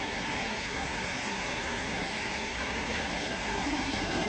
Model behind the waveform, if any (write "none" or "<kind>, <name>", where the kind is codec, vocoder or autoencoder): codec, SNAC